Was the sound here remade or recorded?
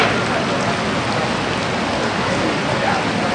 recorded